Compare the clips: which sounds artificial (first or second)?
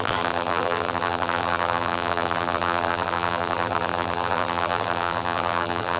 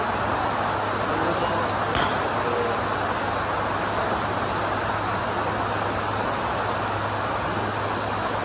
first